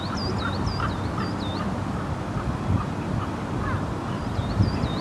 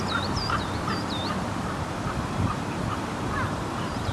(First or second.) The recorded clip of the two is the first